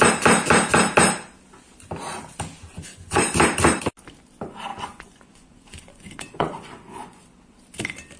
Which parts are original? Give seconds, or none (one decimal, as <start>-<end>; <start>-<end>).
0.0-2.7; 3.3-4.7; 7.2-8.2